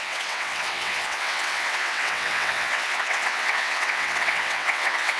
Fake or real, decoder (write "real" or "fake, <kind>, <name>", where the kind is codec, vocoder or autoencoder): fake, vocoder, WaveNeXt